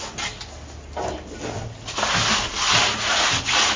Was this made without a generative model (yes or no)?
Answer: yes